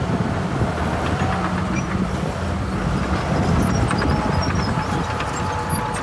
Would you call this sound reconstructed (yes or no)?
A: no